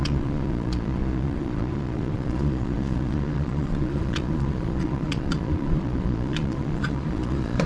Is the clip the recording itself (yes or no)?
no